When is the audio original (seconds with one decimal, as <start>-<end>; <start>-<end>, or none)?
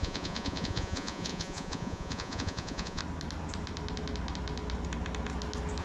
3.0-5.8